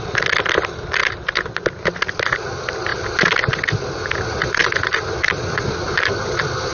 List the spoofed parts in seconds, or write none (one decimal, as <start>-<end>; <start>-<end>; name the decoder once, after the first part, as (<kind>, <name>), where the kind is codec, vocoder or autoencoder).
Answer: none